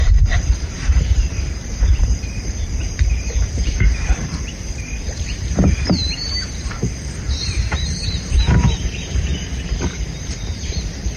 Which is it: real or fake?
fake